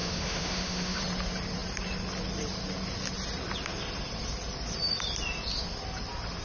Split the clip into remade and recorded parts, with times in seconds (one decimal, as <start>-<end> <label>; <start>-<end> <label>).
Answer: 0.0-1.0 remade; 1.0-6.4 recorded